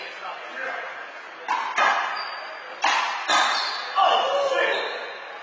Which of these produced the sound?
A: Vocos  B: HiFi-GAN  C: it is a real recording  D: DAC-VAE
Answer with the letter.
C